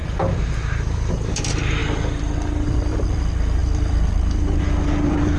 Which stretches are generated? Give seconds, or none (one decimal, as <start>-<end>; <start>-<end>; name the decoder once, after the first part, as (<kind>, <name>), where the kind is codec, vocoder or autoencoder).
0.0-5.4 (vocoder, BigVGAN v2)

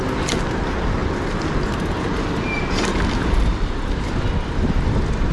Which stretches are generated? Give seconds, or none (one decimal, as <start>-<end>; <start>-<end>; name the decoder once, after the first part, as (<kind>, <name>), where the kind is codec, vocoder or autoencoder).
none

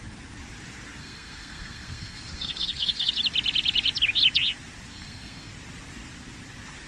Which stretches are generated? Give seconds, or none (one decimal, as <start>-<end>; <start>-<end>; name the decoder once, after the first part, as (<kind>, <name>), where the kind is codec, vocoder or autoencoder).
1.0-3.1 (codec, SNAC); 4.9-5.5

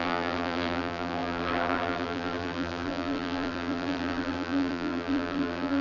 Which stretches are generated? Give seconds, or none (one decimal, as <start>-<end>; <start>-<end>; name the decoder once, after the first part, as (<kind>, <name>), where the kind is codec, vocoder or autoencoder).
0.0-5.8 (vocoder, BigVGAN v2)

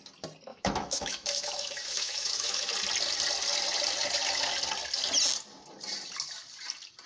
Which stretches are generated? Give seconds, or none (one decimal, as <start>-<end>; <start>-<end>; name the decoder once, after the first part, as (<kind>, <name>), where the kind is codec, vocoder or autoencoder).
0.5-2.7 (autoencoder, DAC-VAE)

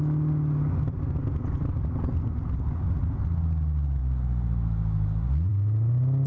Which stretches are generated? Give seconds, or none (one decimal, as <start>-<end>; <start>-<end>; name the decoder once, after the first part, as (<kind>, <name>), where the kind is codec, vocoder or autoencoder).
none

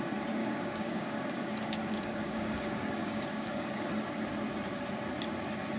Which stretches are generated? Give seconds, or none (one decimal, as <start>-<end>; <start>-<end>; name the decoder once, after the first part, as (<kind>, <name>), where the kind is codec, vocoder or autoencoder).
0.4-3.9 (codec, DAC)

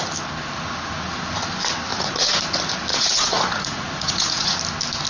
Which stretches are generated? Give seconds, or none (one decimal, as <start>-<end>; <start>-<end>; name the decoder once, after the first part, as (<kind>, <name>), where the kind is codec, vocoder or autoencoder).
1.9-2.4 (vocoder, Vocos); 2.9-4.6